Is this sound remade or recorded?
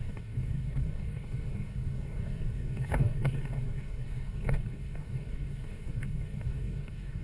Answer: remade